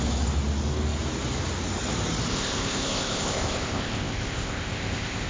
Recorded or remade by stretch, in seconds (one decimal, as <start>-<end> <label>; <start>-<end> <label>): 0.0-2.3 recorded; 2.3-5.3 remade